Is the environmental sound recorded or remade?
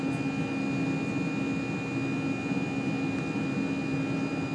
recorded